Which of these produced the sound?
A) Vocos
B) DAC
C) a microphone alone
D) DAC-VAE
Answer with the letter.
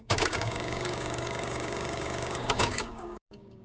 B